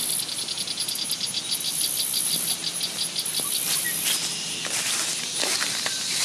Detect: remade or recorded recorded